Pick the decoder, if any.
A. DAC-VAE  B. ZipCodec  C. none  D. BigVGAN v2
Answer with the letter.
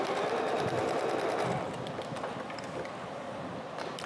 C